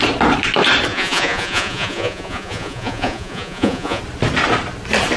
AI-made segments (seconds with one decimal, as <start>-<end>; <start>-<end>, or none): 0.9-4.0